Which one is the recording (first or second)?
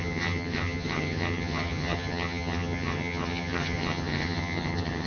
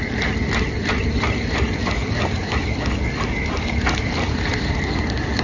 second